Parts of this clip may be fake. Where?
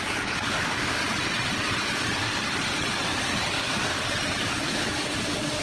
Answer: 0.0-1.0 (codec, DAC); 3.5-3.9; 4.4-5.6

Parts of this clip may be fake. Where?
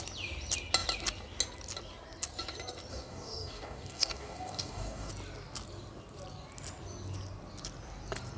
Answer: 2.9-5.1 (codec, DAC)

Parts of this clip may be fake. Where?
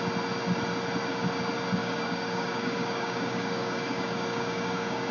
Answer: 1.8-5.1 (codec, DAC)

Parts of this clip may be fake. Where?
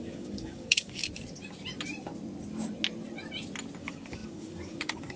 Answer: 0.0-1.0 (codec, DAC); 3.8-5.2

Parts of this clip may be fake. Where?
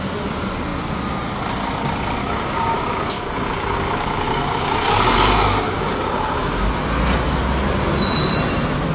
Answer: 2.2-6.7 (codec, DAC)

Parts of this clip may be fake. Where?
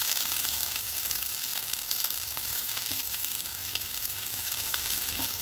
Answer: 0.0-5.4 (codec, DAC)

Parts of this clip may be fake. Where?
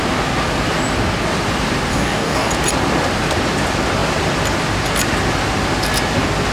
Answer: 1.9-2.5 (codec, DAC)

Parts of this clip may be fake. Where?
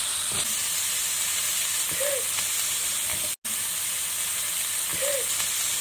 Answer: none